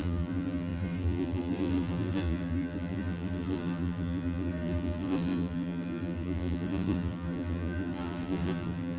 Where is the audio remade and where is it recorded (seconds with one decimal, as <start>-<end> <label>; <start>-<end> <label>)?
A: 0.0-9.0 remade